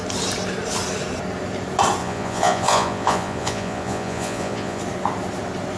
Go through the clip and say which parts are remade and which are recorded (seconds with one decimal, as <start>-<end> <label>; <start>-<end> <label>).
0.0-2.0 recorded; 2.0-4.8 remade; 4.8-5.8 recorded